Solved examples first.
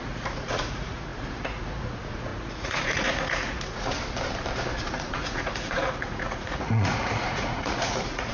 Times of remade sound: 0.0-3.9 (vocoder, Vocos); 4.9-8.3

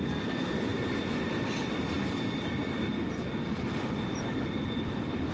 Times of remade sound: none

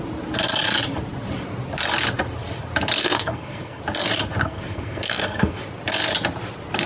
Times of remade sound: 3.0-3.8 (codec, SNAC); 4.4-5.6